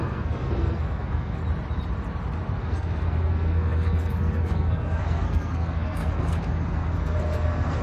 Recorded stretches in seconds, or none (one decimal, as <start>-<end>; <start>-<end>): 1.4-2.6